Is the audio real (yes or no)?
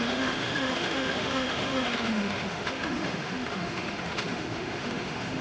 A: no